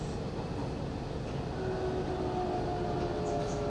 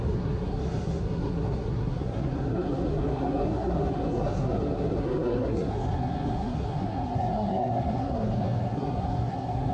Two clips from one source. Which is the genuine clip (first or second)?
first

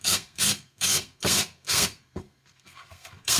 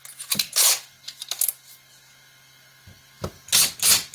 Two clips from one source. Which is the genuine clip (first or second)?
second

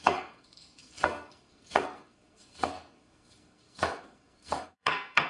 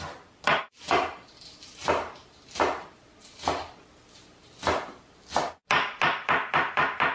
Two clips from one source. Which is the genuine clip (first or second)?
second